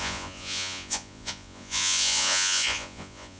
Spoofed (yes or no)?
yes